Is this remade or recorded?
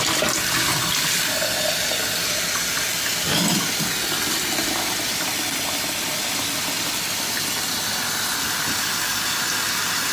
recorded